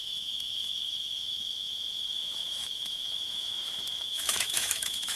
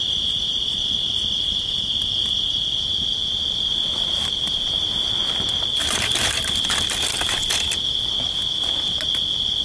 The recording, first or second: second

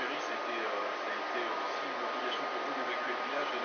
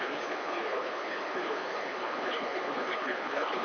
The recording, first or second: first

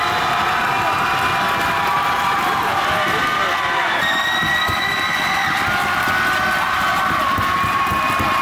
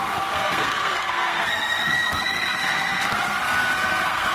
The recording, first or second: first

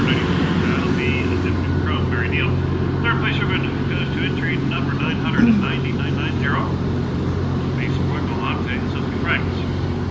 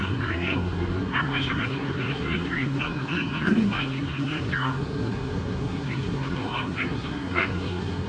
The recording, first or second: first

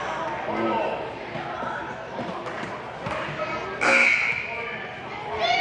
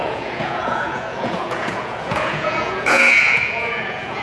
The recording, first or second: first